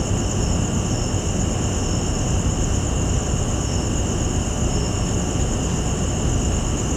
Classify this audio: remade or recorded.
recorded